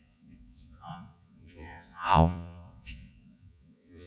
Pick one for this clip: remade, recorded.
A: remade